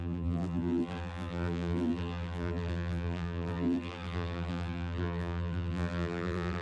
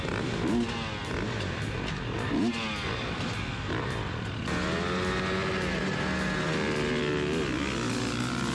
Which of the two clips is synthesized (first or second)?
first